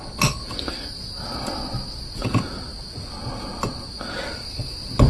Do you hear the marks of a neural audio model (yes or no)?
no